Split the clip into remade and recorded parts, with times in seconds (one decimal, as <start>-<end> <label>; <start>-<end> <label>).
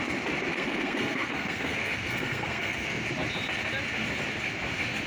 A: 0.0-0.5 recorded; 0.5-3.0 remade; 3.0-5.1 recorded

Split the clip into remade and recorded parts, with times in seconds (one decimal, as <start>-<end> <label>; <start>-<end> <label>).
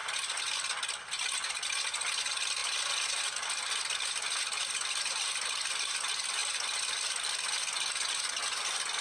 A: 0.0-9.0 recorded